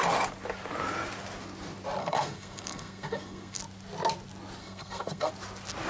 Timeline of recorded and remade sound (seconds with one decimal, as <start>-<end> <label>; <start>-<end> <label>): 0.0-2.0 recorded; 2.0-3.6 remade; 3.6-4.6 recorded; 4.6-5.3 remade; 5.3-5.9 recorded